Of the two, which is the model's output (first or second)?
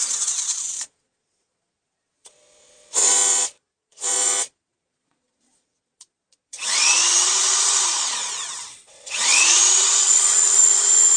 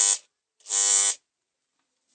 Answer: first